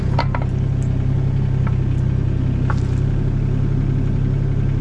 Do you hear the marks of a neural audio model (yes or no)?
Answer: no